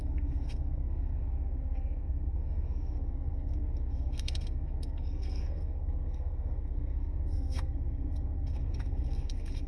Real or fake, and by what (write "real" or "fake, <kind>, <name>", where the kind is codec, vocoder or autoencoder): fake, codec, SNAC